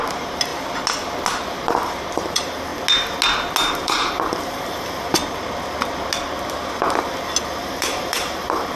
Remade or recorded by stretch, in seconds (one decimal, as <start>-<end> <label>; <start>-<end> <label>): 0.0-0.5 remade; 0.5-1.5 recorded; 1.5-2.7 remade; 2.7-3.7 recorded; 3.7-5.2 remade; 5.2-7.6 recorded; 7.6-8.8 remade